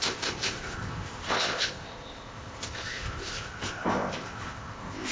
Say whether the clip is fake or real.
fake